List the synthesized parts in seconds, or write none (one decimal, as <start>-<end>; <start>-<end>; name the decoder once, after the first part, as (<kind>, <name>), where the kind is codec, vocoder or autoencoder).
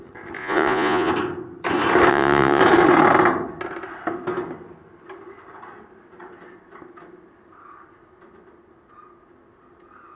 0.4-1.1 (vocoder, Vocos); 2.1-2.6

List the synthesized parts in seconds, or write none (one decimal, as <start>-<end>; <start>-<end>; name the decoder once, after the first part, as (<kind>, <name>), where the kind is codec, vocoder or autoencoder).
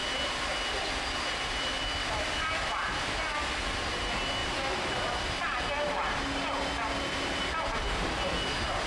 2.0-2.7 (vocoder, BigVGAN v2); 4.4-5.7